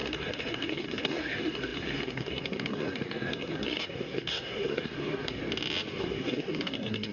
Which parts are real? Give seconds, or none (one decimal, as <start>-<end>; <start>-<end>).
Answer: 5.4-6.0